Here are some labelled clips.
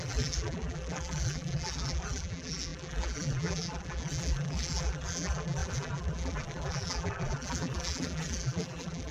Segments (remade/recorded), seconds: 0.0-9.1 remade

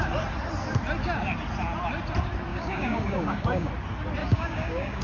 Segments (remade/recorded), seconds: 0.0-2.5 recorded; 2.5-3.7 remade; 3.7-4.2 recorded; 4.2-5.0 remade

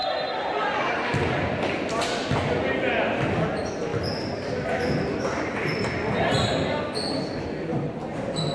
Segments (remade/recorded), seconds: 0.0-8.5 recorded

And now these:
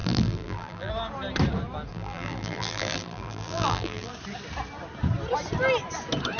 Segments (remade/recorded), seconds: 0.0-0.9 remade; 0.9-1.9 recorded; 1.9-4.1 remade; 4.1-6.4 recorded